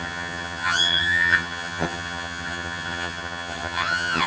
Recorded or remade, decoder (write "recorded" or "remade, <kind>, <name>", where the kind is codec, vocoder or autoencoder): remade, vocoder, HiFi-GAN